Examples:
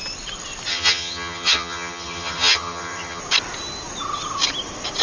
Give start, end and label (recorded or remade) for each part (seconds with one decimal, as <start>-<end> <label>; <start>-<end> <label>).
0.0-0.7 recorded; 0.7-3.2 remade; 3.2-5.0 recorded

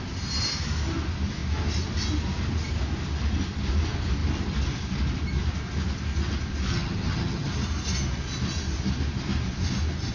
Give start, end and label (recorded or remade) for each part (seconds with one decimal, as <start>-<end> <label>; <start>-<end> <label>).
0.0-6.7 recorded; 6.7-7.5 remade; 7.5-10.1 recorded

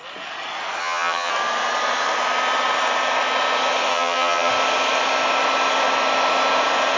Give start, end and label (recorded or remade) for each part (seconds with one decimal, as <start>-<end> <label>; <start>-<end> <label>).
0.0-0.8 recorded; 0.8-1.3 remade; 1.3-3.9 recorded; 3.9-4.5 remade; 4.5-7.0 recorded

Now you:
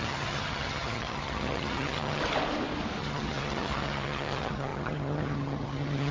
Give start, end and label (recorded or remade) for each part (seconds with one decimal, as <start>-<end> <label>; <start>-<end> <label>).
0.0-2.2 remade; 2.2-3.0 recorded; 3.0-6.1 remade

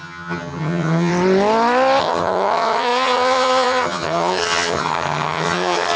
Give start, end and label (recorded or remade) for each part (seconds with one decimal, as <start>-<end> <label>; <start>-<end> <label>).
0.0-1.1 remade; 1.1-2.0 recorded; 2.0-6.0 remade